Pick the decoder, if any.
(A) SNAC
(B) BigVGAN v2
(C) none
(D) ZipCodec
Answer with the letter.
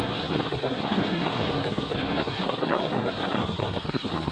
A